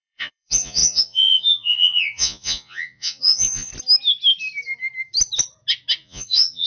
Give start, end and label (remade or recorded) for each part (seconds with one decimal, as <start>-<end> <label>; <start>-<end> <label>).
0.0-3.7 remade; 3.7-6.0 recorded; 6.0-6.7 remade